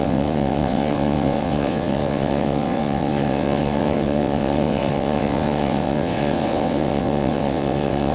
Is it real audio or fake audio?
fake